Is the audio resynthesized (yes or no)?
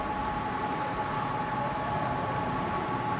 no